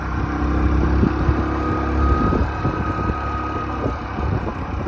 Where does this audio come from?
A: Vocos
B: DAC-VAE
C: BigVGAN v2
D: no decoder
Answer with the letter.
D